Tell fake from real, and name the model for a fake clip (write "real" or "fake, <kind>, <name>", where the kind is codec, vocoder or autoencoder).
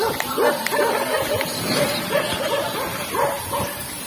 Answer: fake, vocoder, BigVGAN v2